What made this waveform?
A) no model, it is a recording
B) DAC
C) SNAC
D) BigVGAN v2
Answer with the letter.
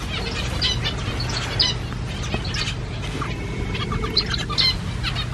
A